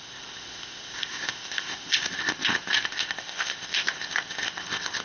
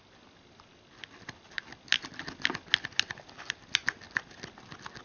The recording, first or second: second